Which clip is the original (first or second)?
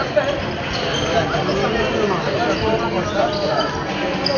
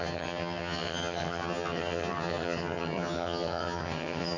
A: first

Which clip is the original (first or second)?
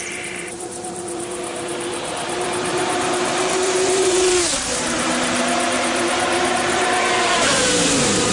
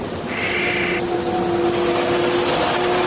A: second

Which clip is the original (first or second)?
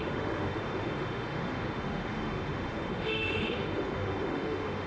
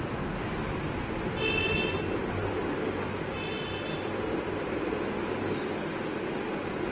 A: second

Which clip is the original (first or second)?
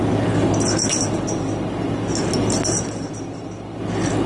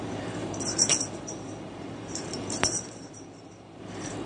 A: first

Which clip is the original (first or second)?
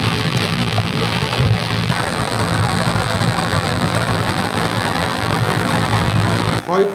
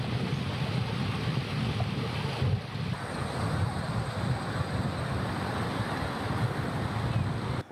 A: second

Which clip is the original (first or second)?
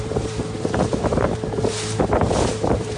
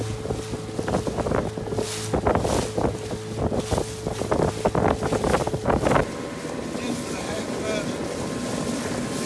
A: second